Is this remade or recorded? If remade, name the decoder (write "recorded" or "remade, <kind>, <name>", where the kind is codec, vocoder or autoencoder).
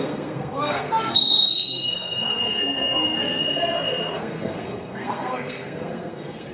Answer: remade, codec, SNAC